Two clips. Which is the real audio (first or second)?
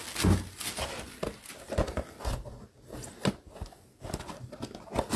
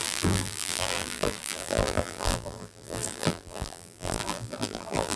first